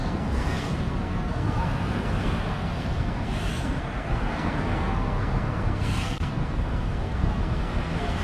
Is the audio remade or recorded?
remade